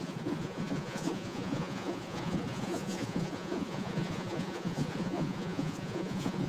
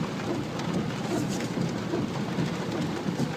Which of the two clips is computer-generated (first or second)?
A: first